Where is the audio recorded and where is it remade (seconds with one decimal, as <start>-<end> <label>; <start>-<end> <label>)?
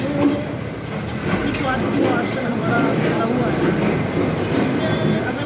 0.0-1.4 recorded; 1.4-2.9 remade; 2.9-5.5 recorded